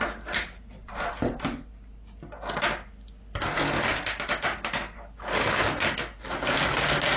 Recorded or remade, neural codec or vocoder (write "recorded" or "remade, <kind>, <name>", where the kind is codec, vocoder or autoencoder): recorded